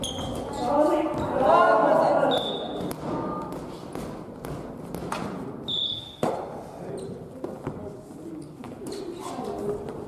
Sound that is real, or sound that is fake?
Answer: real